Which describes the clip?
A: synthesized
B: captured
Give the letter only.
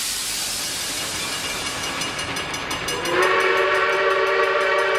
B